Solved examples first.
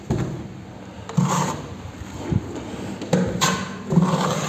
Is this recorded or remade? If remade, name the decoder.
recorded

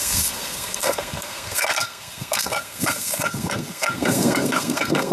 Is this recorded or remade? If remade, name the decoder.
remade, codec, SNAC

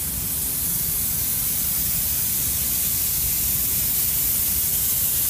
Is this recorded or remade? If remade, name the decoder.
recorded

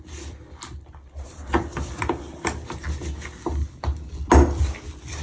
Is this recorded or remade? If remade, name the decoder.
recorded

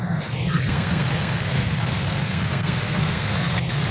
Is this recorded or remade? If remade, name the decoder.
remade, codec, SNAC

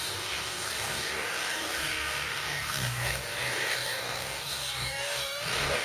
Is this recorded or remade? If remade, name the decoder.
remade, codec, DAC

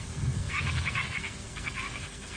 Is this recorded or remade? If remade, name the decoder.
remade, codec, SNAC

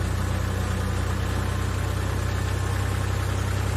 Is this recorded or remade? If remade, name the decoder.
recorded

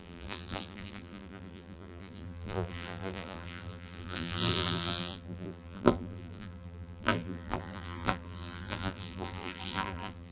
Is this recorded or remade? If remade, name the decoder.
remade, vocoder, BigVGAN v2